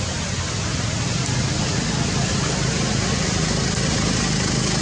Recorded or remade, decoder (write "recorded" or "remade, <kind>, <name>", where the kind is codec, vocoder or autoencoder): recorded